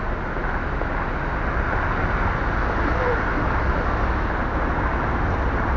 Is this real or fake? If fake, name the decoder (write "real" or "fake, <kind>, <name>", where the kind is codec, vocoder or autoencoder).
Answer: real